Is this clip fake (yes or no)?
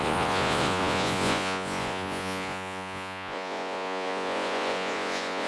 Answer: yes